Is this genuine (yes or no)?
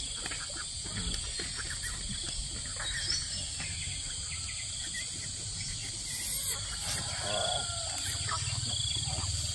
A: yes